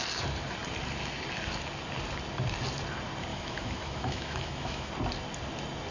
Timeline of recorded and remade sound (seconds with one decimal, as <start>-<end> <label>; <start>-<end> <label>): 0.0-3.3 recorded; 3.3-4.9 remade; 4.9-5.9 recorded